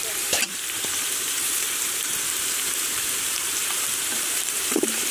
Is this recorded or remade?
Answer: remade